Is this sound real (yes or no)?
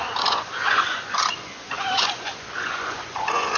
no